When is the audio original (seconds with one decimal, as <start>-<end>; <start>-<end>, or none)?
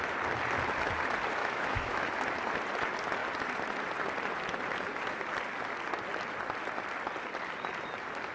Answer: 0.0-1.4; 2.1-8.3